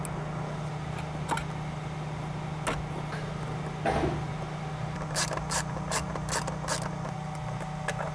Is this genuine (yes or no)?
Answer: yes